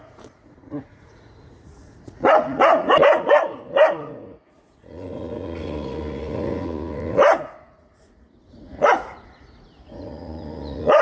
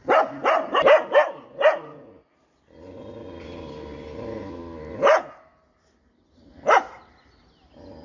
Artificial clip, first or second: first